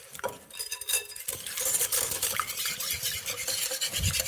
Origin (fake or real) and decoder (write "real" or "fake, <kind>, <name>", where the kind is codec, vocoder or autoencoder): fake, vocoder, BigVGAN v2